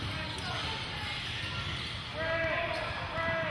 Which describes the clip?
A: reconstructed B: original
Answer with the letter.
B